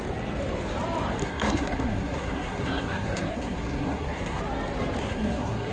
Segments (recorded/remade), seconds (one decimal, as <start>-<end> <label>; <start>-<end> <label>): 0.0-1.2 recorded; 1.2-4.4 remade; 4.4-5.0 recorded; 5.0-5.7 remade